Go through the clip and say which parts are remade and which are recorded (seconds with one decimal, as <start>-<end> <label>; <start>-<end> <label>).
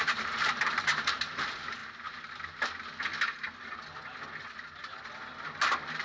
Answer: 0.0-1.8 remade; 1.8-5.4 recorded; 5.4-6.0 remade